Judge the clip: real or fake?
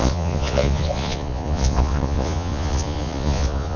fake